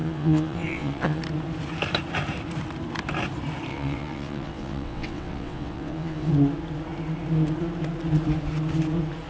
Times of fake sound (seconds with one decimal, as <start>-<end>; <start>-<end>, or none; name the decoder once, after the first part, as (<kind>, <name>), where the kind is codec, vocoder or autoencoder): 0.0-1.2 (vocoder, WaveNeXt); 3.7-6.3